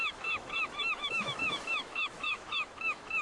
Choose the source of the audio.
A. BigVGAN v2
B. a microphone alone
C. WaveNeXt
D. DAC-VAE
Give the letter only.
D